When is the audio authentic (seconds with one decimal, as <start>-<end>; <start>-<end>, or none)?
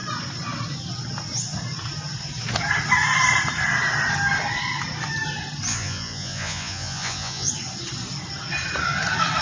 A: 0.0-5.7; 7.5-9.4